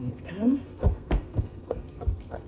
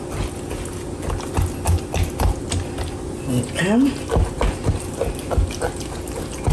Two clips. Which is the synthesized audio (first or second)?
first